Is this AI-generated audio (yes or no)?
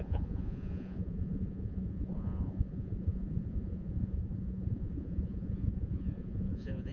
yes